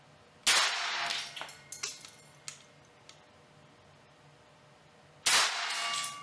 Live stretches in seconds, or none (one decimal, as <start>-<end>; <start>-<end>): 0.0-6.2